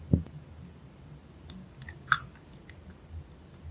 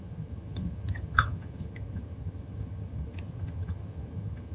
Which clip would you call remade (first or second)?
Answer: second